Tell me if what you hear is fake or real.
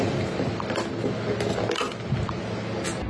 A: real